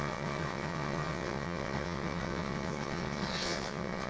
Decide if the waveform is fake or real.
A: fake